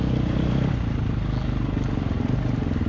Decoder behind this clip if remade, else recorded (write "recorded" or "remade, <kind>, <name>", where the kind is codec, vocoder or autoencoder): recorded